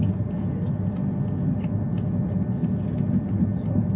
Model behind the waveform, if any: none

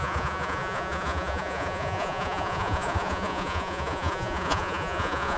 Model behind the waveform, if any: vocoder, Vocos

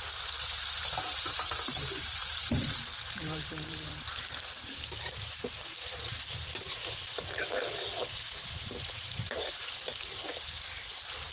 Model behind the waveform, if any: vocoder, BigVGAN v2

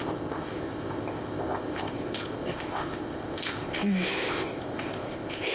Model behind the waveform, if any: codec, ZipCodec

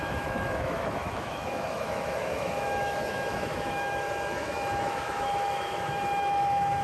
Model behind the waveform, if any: autoencoder, DAC-VAE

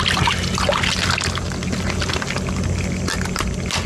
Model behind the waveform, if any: none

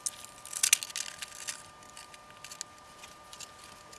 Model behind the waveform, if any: none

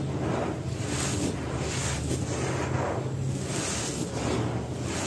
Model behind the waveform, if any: none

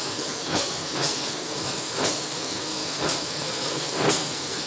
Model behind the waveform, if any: codec, SNAC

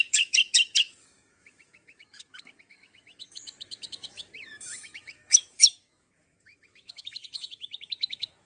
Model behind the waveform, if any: autoencoder, DAC-VAE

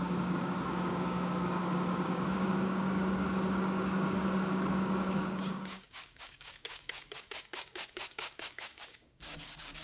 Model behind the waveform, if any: codec, DAC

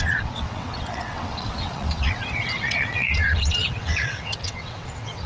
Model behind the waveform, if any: vocoder, WaveNeXt